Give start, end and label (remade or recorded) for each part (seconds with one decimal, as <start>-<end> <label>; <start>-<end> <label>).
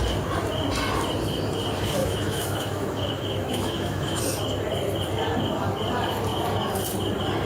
0.0-2.0 recorded; 2.0-4.2 remade; 4.2-7.4 recorded